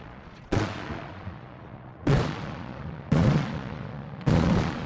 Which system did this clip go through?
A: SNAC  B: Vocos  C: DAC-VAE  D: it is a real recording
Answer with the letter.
B